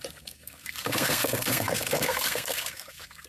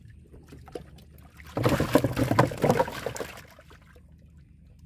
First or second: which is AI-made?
first